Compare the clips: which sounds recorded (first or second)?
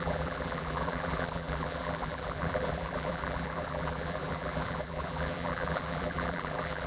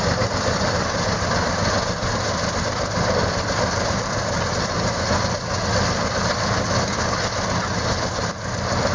second